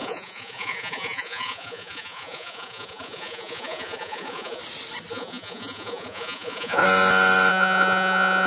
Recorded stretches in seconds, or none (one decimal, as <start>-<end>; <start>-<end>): 4.6-5.1; 6.8-7.5